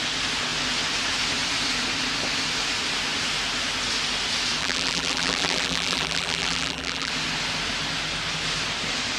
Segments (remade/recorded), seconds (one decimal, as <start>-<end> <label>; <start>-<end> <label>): 0.0-4.6 recorded; 4.6-7.1 remade; 7.1-9.2 recorded